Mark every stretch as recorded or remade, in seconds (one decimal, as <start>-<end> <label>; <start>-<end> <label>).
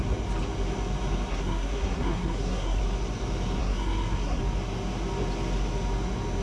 0.0-1.3 recorded; 1.3-2.8 remade; 2.8-3.6 recorded; 3.6-4.4 remade; 4.4-6.4 recorded